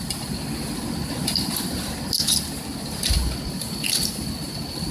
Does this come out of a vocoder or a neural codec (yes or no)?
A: no